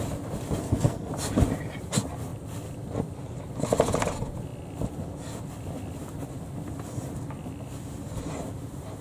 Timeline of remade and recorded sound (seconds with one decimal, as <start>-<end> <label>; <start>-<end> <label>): 0.0-0.6 recorded; 0.6-1.1 remade; 1.1-9.0 recorded